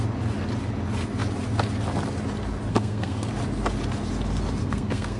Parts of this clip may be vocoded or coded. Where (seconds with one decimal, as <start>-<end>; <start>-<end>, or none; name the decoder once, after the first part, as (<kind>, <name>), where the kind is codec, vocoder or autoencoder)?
2.7-3.3 (codec, SNAC); 4.6-5.2